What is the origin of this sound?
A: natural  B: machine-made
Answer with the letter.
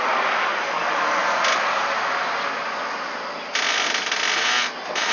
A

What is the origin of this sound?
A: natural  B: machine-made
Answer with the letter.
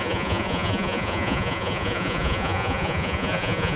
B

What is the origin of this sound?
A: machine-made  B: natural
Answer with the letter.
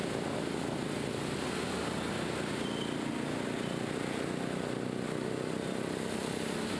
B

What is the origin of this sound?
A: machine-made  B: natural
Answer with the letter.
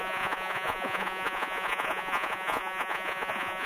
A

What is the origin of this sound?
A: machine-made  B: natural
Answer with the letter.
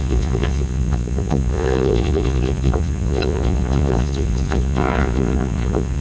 A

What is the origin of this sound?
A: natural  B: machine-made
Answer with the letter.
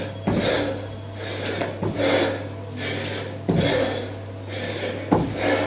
A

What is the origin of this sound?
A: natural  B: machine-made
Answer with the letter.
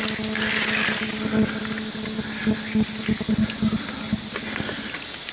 A